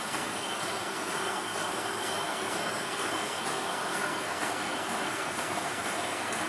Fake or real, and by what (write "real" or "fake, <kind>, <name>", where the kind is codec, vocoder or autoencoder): fake, codec, SNAC